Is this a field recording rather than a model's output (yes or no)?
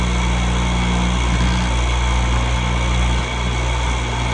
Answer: yes